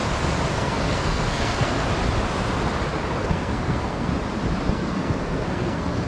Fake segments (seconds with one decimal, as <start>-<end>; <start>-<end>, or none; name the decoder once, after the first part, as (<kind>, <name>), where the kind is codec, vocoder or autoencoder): 0.5-1.9 (codec, SNAC); 3.2-4.1; 4.7-6.1